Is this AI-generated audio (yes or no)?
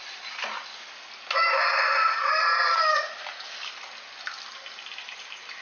no